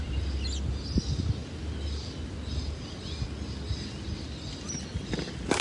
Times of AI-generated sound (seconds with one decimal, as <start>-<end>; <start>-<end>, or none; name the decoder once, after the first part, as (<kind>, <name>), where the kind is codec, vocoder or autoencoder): none

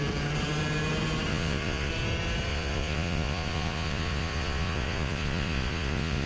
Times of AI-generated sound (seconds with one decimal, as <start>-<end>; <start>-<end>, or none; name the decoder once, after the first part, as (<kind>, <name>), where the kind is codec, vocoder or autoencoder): 1.3-1.9 (vocoder, Vocos); 2.5-6.3

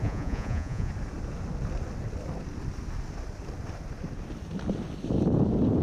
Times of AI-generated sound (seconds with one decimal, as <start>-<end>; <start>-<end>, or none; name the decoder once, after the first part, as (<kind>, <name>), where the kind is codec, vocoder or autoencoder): 0.0-0.9 (vocoder, Vocos)